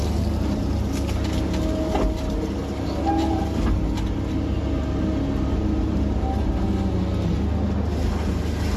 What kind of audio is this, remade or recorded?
recorded